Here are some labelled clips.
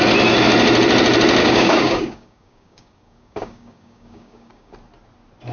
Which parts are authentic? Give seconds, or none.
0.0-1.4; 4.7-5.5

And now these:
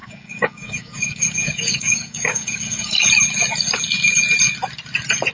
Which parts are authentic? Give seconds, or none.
3.1-5.3

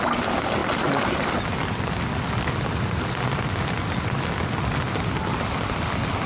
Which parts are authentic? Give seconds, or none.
0.0-6.3

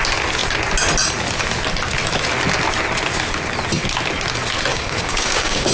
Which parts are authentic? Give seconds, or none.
0.0-4.7

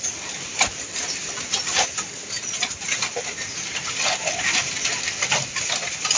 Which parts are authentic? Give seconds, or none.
0.0-6.2